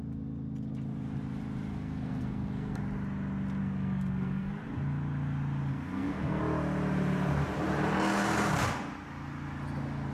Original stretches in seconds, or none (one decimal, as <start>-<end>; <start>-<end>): 0.0-1.7; 2.8-3.6; 4.5-5.7; 6.4-10.1